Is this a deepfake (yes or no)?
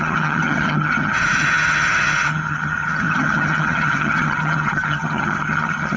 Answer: yes